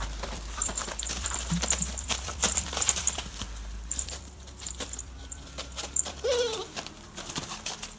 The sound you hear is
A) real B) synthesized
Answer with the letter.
B